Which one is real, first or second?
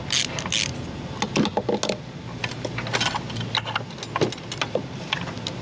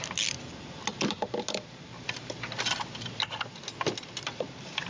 first